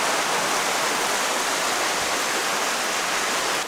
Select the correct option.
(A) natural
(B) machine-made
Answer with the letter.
A